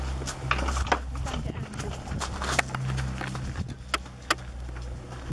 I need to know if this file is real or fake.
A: real